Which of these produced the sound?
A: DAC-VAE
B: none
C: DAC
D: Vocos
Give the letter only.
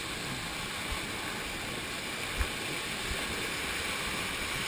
B